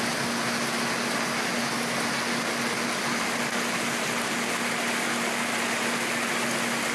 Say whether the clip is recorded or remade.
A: recorded